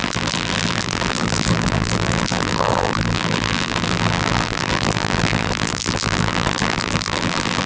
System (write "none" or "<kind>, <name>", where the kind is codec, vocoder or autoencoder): vocoder, BigVGAN v2